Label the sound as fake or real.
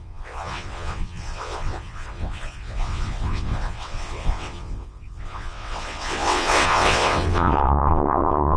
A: fake